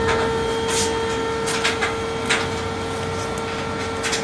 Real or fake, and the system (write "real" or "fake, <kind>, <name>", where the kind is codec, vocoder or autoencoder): real